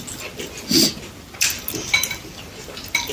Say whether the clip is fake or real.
real